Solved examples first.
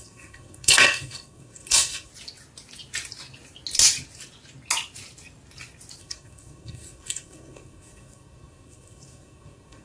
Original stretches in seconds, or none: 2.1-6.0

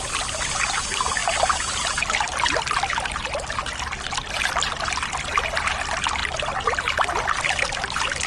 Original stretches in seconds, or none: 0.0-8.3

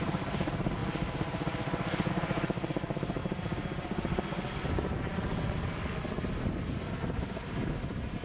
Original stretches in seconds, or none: 0.8-2.1; 3.2-6.3